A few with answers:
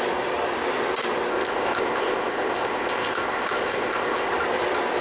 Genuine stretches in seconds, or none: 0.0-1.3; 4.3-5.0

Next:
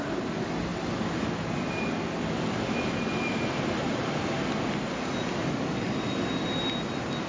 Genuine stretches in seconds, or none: 0.0-7.3

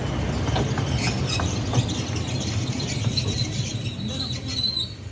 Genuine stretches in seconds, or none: 0.0-5.1